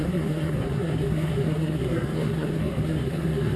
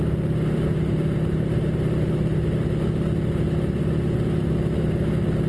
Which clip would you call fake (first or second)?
first